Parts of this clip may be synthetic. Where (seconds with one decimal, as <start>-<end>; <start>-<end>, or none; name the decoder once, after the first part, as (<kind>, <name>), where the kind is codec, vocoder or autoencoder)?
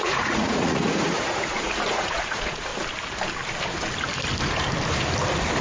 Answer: 0.0-2.7 (vocoder, Vocos)